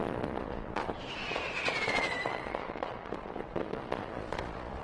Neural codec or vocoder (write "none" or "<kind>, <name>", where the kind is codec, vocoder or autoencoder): vocoder, Vocos